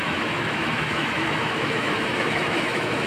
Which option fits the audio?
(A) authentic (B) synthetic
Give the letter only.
B